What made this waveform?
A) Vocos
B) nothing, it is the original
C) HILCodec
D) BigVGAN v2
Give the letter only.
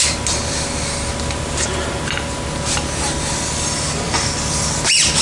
B